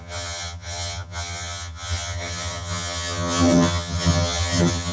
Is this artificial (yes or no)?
yes